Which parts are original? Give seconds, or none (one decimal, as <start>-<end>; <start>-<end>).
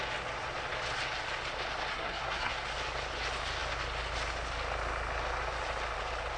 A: 0.0-1.9; 2.5-6.4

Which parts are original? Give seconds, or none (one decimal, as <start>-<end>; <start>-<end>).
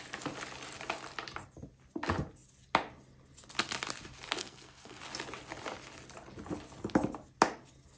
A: 0.0-4.4; 5.0-8.0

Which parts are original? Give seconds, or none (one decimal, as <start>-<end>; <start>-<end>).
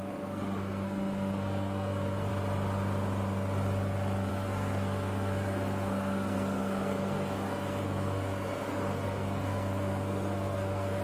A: 2.3-4.3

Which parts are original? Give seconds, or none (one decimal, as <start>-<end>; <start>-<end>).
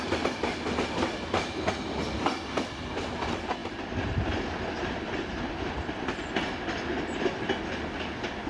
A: 0.0-8.5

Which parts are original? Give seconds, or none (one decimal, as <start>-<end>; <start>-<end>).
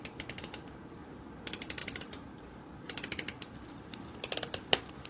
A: 0.0-5.1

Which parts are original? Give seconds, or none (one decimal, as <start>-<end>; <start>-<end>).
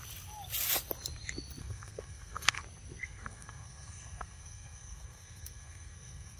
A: 0.0-1.6; 2.6-3.0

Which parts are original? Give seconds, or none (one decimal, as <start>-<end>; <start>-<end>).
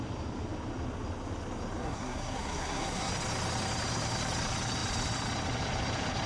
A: 0.0-1.8; 3.1-6.3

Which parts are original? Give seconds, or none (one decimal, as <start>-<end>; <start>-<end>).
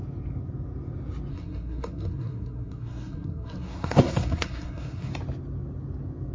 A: 0.0-1.3; 5.1-6.3